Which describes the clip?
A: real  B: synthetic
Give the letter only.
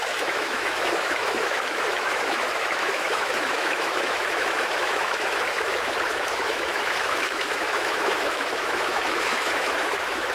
B